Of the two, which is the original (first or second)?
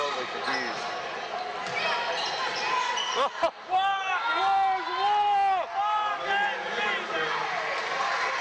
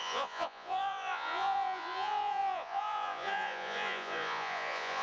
first